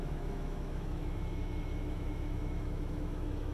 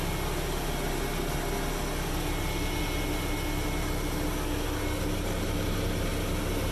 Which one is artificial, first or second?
first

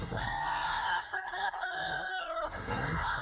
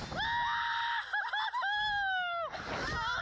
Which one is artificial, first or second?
first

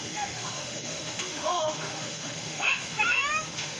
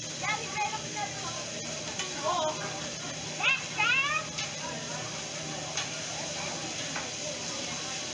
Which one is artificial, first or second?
first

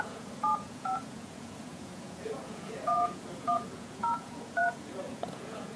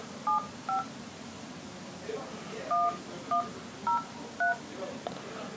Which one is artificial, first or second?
first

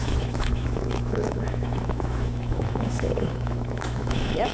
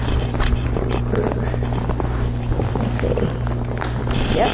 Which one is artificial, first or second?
first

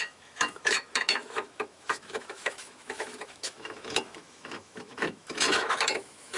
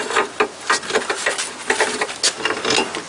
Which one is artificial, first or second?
first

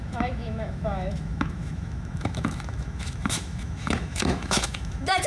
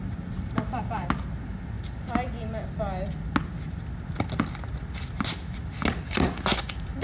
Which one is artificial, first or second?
first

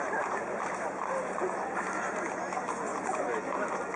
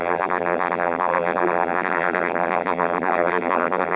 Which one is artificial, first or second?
second